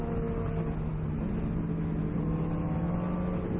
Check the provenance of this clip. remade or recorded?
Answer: recorded